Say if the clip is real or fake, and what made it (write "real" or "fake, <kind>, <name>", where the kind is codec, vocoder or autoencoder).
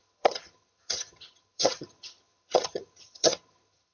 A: fake, vocoder, HiFi-GAN